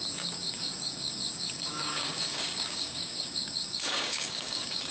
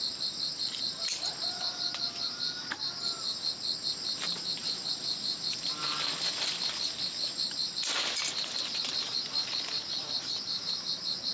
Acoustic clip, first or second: second